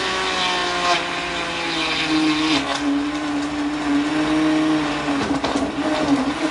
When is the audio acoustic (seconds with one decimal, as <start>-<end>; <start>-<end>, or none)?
0.0-6.5